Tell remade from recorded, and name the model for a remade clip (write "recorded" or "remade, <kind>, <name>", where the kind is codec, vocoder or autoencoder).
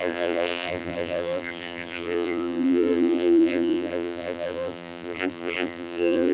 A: remade, vocoder, BigVGAN v2